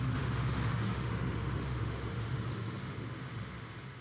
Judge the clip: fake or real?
fake